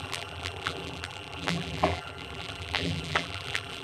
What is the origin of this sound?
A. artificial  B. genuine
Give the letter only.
A